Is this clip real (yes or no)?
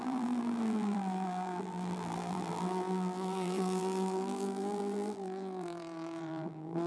no